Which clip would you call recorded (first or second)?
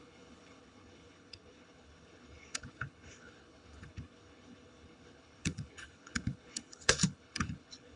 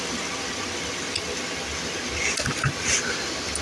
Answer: second